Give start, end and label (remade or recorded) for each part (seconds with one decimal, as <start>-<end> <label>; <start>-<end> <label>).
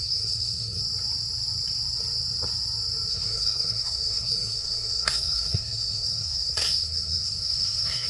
0.0-0.8 remade; 0.8-3.1 recorded; 3.1-8.1 remade